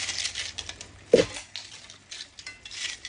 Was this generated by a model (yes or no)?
no